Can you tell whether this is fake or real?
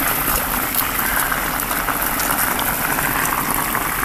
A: real